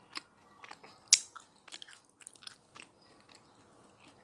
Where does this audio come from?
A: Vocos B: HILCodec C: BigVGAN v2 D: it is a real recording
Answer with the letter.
D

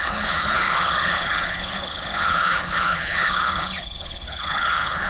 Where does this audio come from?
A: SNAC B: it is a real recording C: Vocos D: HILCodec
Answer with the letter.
D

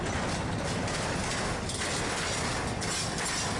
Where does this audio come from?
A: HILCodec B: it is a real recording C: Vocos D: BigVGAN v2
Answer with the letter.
B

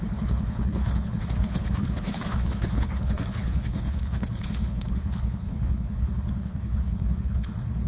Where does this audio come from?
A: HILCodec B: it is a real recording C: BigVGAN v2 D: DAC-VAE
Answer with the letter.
A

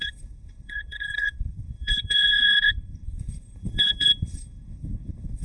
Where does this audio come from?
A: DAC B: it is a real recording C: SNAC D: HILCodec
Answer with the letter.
D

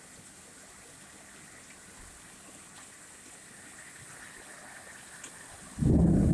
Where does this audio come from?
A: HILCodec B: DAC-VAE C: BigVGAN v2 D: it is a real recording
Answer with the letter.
D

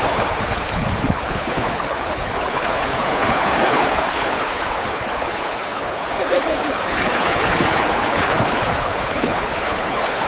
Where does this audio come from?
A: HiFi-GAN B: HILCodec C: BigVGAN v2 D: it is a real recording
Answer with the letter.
B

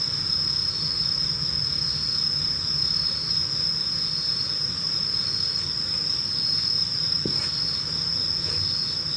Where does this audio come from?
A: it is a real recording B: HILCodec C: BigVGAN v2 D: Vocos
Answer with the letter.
A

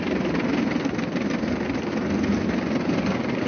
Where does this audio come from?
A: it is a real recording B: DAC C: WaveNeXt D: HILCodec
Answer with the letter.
A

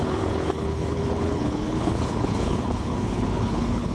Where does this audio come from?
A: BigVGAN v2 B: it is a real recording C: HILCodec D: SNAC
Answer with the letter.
C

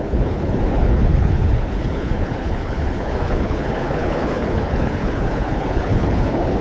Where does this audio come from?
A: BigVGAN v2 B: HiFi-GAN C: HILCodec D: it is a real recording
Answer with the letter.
C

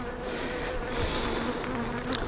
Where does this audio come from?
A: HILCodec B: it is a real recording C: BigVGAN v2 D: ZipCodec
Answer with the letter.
B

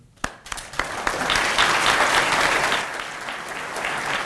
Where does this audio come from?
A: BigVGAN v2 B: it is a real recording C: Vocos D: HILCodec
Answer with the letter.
B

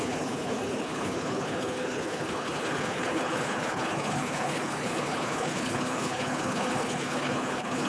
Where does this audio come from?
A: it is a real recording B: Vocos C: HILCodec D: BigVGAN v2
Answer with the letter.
C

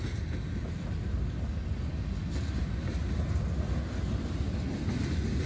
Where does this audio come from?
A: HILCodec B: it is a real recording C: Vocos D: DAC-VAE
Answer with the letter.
B